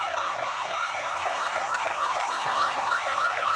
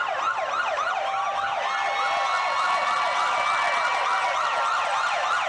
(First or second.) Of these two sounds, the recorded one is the second